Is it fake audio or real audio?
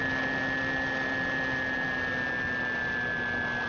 real